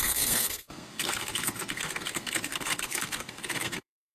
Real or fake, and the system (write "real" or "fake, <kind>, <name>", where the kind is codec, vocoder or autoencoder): fake, codec, SNAC